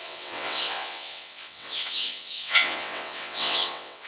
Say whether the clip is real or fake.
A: fake